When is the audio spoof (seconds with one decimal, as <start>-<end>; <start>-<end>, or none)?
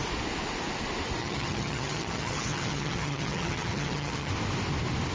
1.2-4.3